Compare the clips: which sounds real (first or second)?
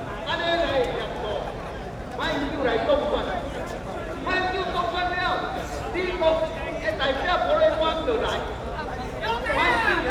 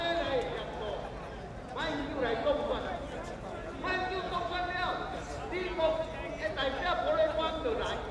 second